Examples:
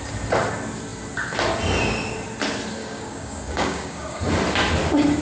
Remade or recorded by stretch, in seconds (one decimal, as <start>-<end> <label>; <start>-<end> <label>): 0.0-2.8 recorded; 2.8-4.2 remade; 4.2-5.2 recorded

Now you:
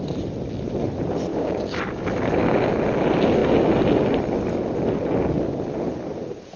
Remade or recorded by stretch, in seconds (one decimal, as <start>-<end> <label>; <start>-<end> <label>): 0.0-1.3 recorded; 1.3-1.9 remade; 1.9-6.6 recorded

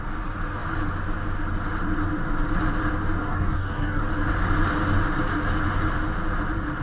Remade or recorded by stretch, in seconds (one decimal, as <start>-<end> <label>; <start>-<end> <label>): 0.0-3.2 recorded; 3.2-4.0 remade; 4.0-6.8 recorded